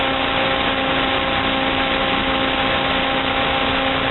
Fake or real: real